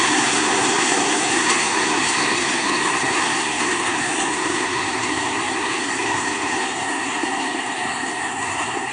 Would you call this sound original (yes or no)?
no